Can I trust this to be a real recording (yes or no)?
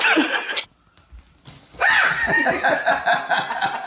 yes